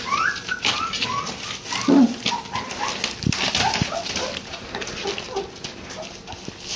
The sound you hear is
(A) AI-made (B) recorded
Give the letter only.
B